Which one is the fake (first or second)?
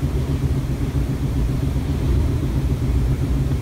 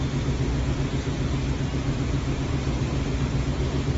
first